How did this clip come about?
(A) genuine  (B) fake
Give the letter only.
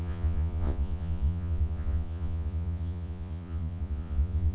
B